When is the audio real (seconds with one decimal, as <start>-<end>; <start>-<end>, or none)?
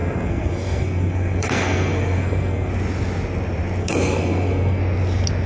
2.7-3.8; 4.8-5.5